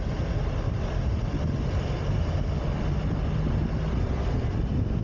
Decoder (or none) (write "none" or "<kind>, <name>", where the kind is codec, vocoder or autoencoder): none